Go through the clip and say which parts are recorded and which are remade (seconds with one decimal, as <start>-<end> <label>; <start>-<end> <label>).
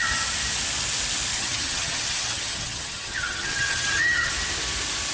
0.0-1.3 recorded; 1.3-4.3 remade; 4.3-5.1 recorded